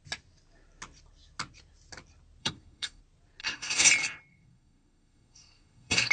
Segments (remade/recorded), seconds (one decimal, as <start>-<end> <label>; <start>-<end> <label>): 0.0-2.4 recorded; 2.4-3.0 remade; 3.0-3.4 recorded; 3.4-3.9 remade; 3.9-4.3 recorded; 4.3-6.1 remade